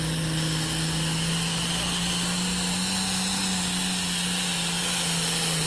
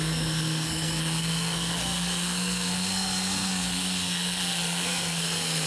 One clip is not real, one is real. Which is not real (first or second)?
second